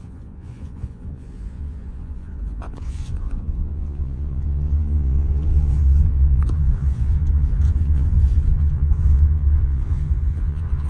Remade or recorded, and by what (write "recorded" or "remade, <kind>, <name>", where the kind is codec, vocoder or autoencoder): remade, vocoder, Vocos